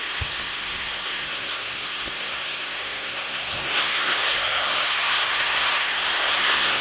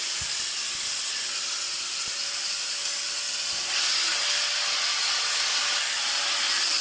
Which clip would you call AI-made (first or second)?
first